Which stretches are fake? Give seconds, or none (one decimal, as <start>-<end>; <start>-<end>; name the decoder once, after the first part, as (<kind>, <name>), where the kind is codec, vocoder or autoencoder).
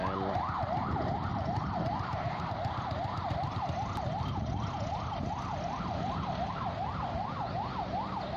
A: 1.3-2.4 (vocoder, BigVGAN v2)